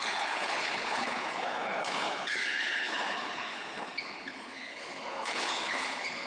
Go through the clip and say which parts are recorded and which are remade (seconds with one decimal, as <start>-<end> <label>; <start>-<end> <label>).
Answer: 0.0-6.3 remade